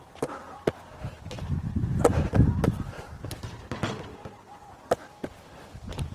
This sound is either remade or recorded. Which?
recorded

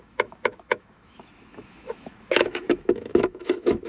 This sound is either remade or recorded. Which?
remade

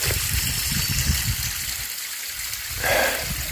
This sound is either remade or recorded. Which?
recorded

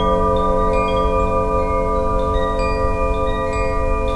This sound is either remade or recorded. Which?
recorded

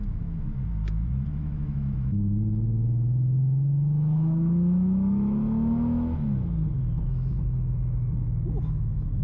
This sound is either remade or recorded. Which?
remade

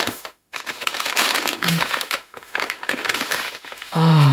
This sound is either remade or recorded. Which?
remade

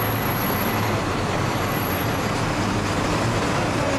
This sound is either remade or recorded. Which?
recorded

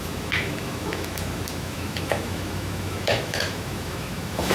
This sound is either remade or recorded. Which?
remade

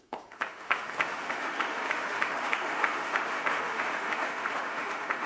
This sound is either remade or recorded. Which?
remade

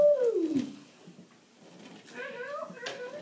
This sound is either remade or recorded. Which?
recorded